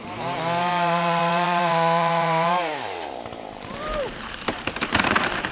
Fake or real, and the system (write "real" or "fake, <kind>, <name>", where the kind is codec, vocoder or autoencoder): fake, vocoder, BigVGAN v2